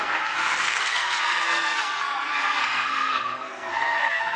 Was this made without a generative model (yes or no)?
no